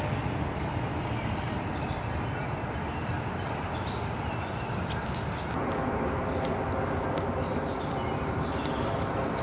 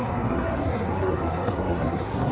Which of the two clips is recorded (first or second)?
first